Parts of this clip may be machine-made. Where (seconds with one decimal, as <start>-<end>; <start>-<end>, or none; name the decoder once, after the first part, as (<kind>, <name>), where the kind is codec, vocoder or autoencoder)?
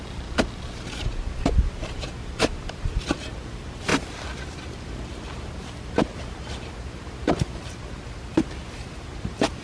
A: none